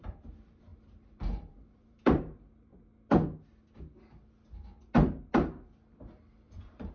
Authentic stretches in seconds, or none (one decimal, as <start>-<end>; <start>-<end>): 2.7-6.5